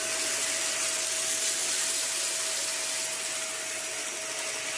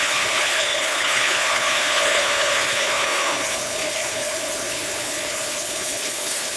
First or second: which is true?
first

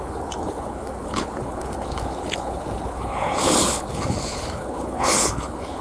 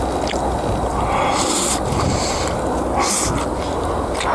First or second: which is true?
second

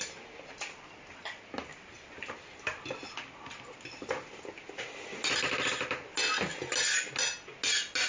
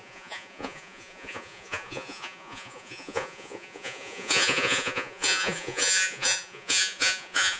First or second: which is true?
first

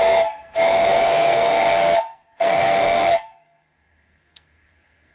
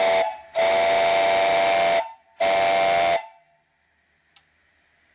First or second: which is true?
second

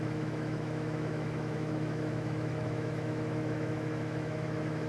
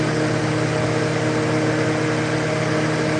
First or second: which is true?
second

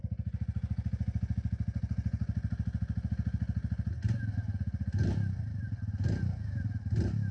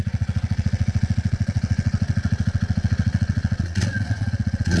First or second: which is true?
first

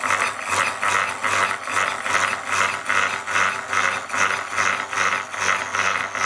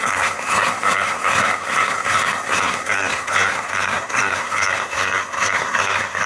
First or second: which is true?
first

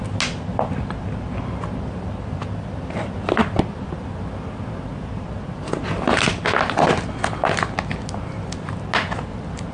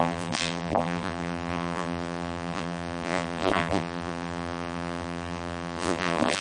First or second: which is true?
first